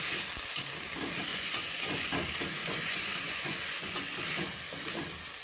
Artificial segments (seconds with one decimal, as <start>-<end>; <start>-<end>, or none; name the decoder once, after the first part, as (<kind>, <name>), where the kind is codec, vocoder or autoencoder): 1.3-2.1 (vocoder, Vocos); 2.6-4.2